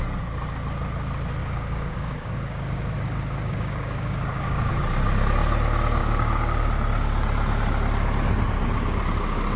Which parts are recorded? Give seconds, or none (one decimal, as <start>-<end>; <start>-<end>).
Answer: 0.0-1.4; 4.7-6.0; 6.7-9.6